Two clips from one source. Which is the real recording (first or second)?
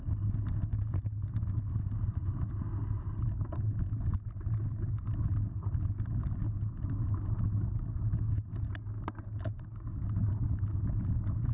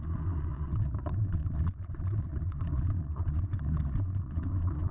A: first